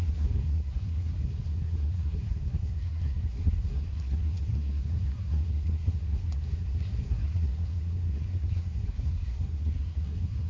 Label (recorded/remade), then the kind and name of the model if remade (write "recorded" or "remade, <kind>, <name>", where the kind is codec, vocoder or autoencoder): remade, codec, SNAC